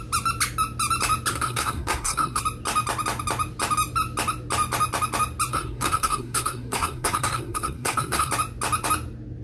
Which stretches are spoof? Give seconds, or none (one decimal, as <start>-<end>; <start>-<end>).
1.3-2.4; 5.5-8.3

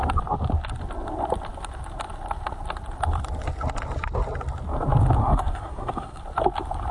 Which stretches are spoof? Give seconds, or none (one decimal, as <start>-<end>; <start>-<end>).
5.2-6.2

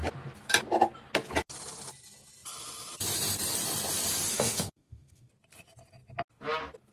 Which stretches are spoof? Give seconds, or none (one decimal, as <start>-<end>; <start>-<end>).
4.3-5.3

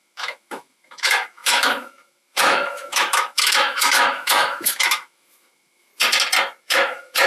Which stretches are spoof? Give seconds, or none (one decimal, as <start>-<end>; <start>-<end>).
0.0-5.9; 6.6-7.3

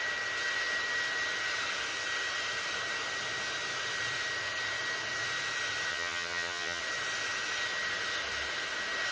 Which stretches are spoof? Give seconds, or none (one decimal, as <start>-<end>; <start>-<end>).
5.9-6.8

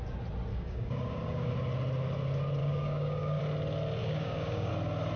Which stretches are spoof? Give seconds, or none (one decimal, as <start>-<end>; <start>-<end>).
0.5-1.5; 2.6-3.4; 4.0-4.7

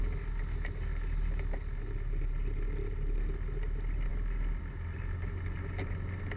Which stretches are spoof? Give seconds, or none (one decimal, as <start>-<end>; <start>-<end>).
none